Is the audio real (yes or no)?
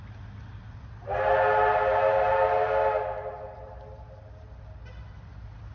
yes